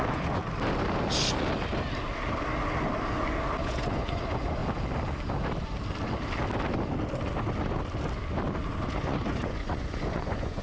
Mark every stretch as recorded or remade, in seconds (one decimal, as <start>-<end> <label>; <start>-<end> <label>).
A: 0.0-0.4 remade; 0.4-3.6 recorded; 3.6-4.6 remade; 4.6-8.9 recorded; 8.9-10.6 remade